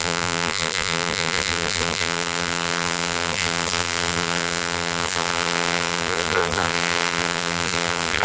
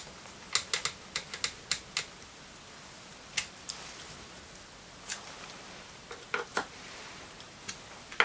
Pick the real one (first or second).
second